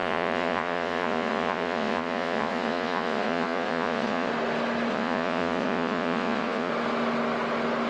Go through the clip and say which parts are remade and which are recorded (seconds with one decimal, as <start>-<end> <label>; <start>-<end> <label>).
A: 0.0-4.3 remade; 4.3-4.9 recorded; 4.9-6.7 remade; 6.7-7.9 recorded